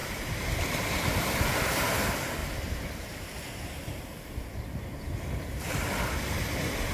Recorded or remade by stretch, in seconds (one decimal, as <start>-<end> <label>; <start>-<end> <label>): 0.0-0.6 remade; 0.6-6.9 recorded